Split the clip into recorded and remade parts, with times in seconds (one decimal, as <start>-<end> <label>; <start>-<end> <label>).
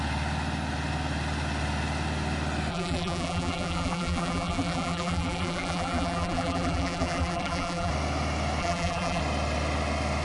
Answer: 0.0-2.7 recorded; 2.7-7.9 remade; 7.9-8.6 recorded; 8.6-9.2 remade; 9.2-10.2 recorded